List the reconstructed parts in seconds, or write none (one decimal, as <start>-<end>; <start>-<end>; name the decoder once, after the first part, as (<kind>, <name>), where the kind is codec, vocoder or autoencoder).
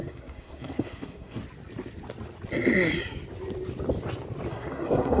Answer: 0.0-1.4 (codec, SNAC); 4.5-5.2